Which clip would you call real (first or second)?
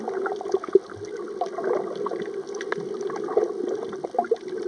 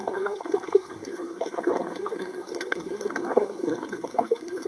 first